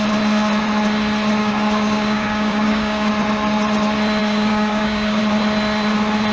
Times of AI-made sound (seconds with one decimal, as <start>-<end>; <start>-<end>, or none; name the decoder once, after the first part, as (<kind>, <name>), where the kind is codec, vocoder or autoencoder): 1.4-3.1 (codec, DAC); 4.2-5.2